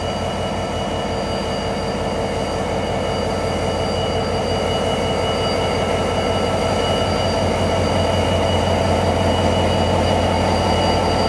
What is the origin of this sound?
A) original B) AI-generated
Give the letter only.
A